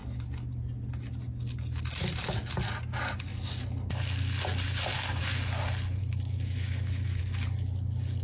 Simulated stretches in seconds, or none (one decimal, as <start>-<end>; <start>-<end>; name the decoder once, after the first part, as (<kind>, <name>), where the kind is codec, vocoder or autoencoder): 6.0-7.2 (autoencoder, DAC-VAE)